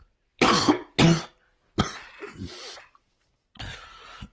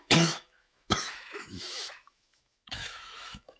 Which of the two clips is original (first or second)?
first